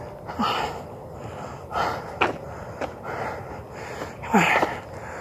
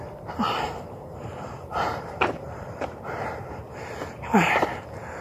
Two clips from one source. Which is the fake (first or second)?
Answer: second